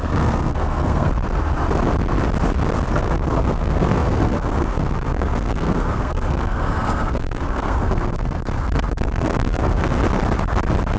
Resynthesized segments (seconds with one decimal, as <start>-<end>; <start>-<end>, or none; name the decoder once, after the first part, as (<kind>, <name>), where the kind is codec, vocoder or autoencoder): 0.0-1.1 (codec, SNAC); 2.9-10.0